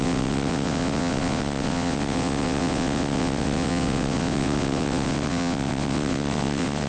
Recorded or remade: remade